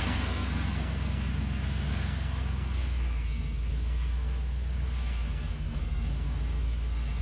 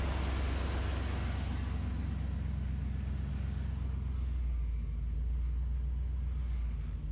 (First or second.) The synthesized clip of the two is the first